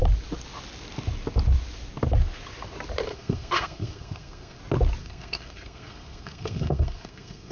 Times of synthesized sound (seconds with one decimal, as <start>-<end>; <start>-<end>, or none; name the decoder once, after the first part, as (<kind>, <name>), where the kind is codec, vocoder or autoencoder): 3.1-4.6 (codec, SNAC); 5.0-7.5